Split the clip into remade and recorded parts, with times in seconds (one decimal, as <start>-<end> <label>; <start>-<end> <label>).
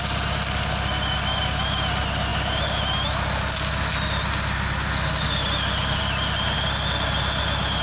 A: 0.0-7.8 recorded